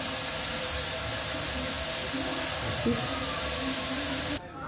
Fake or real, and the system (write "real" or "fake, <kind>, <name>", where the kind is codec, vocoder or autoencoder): real